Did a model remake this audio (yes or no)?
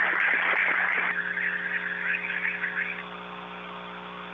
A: no